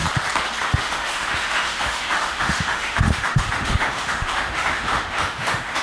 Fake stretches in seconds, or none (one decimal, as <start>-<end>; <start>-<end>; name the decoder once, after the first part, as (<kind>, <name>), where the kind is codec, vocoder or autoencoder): 0.6-5.8 (autoencoder, DAC-VAE)